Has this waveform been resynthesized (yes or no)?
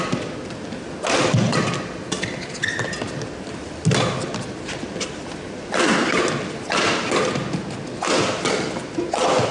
no